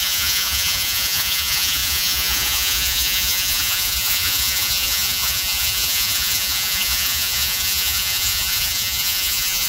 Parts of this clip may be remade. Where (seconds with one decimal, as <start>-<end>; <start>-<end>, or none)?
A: 0.0-9.7